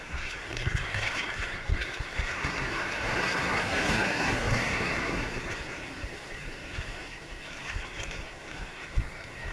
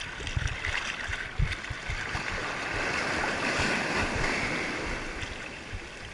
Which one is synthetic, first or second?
first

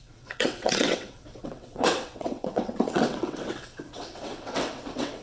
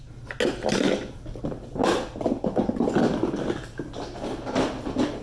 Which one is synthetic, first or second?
first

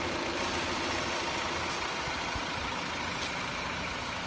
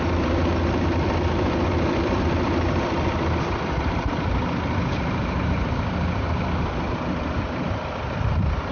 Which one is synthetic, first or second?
second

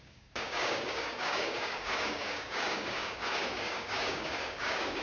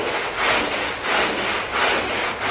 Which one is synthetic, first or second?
first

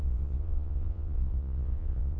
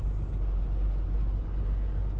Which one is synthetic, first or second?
first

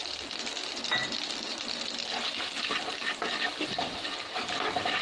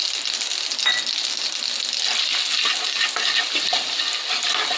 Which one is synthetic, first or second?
first